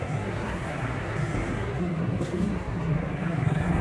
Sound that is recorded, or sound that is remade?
remade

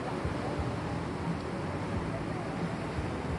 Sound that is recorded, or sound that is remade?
recorded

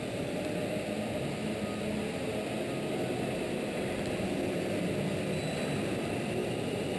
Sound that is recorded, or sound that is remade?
recorded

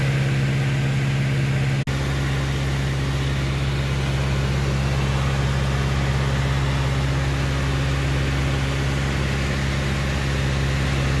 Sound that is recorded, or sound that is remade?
recorded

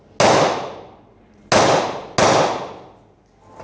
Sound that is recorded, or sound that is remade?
recorded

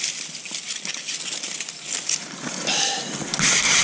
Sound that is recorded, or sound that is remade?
recorded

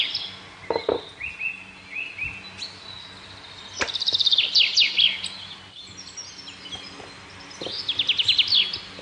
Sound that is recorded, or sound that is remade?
recorded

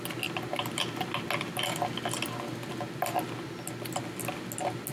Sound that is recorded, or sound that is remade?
recorded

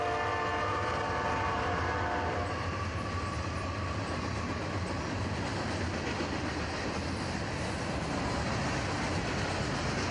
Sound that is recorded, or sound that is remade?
recorded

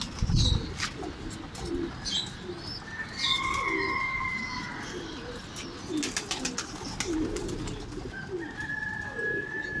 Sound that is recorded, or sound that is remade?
recorded